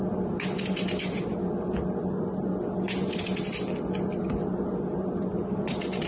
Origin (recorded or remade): recorded